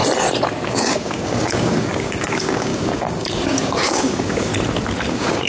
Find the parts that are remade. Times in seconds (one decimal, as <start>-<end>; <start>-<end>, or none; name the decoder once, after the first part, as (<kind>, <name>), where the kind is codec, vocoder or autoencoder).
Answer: 0.7-4.5 (codec, DAC); 5.1-5.5